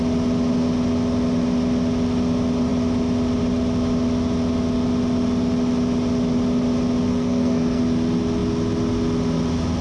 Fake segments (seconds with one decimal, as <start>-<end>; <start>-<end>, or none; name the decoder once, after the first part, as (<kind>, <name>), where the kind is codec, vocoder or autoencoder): 7.1-7.8 (codec, SNAC)